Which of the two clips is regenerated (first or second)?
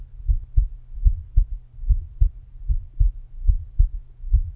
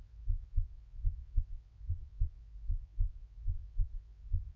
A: second